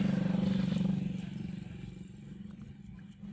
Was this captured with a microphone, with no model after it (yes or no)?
yes